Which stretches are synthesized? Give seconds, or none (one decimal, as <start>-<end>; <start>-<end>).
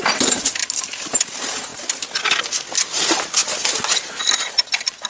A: none